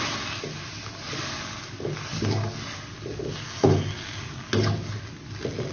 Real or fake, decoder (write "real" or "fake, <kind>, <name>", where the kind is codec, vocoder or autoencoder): real